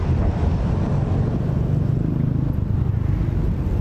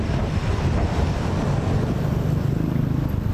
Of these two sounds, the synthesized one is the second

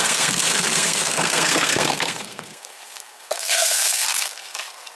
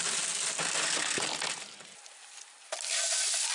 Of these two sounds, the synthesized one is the first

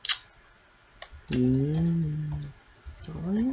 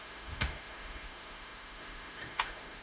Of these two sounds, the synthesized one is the second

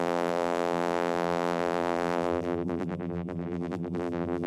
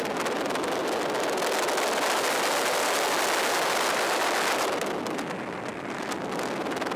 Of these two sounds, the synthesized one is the first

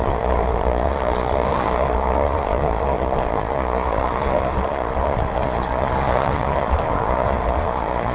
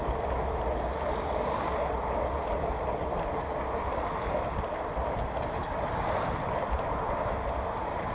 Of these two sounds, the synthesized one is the first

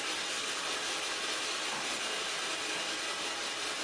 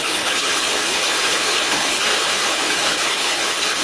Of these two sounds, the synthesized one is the second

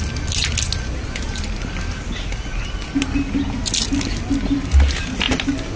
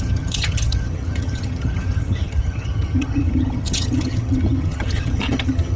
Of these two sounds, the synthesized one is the second